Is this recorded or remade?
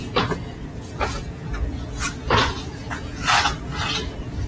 remade